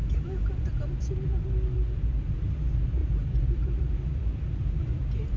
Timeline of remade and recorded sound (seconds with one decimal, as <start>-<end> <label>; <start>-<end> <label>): 0.0-3.0 recorded; 3.0-4.8 remade; 4.8-5.4 recorded